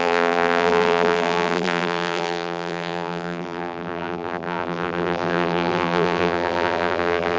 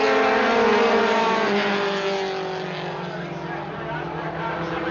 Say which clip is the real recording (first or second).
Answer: second